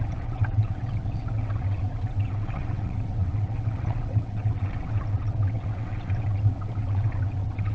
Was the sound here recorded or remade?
remade